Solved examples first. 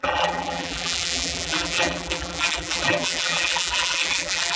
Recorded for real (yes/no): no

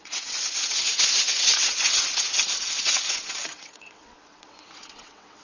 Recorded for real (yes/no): no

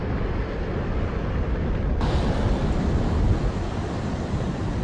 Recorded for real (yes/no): yes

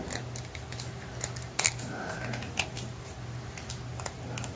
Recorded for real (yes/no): yes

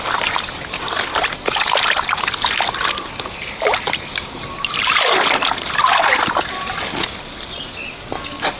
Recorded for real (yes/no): yes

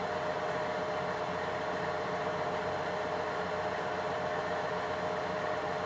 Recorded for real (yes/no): yes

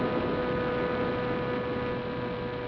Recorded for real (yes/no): yes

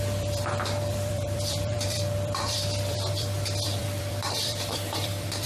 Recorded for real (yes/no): no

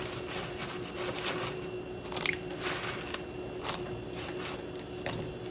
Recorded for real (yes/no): yes